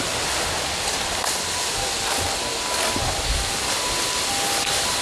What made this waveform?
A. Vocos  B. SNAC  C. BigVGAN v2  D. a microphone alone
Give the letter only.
D